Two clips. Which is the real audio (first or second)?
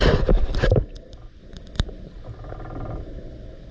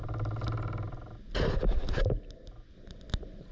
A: second